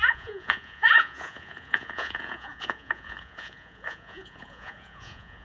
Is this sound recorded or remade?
remade